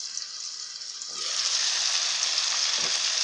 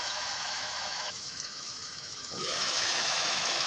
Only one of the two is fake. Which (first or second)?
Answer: second